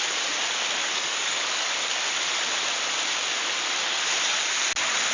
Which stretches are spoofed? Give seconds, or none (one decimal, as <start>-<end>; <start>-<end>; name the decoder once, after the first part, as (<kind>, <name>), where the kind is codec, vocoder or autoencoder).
0.8-1.7 (codec, DAC)